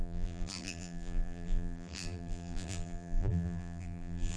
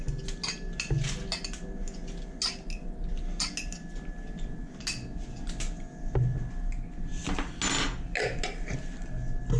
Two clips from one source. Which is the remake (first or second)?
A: first